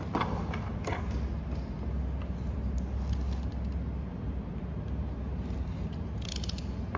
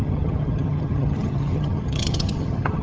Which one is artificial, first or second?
second